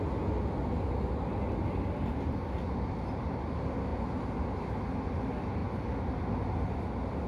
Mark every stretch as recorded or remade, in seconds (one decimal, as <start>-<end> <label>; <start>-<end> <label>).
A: 0.0-7.3 recorded